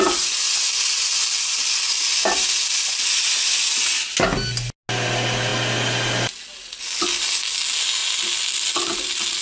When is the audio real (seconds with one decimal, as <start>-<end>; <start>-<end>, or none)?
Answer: 0.0-9.4